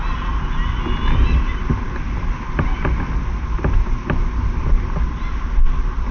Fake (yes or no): no